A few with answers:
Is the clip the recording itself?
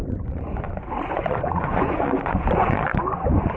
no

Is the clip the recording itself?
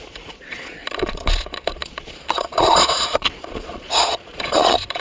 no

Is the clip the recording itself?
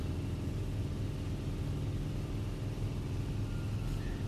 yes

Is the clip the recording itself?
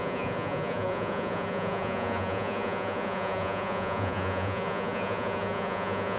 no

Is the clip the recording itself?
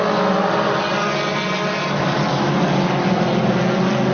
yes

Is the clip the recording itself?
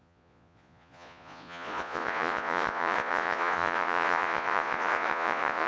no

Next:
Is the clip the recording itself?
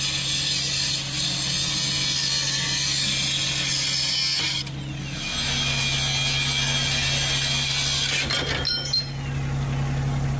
yes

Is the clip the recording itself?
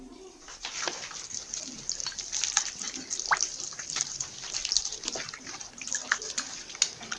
yes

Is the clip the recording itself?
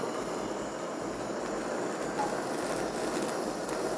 yes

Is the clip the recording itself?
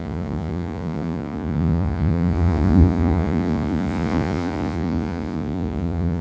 no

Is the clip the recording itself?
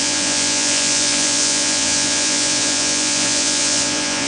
no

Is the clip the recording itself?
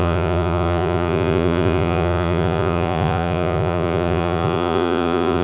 no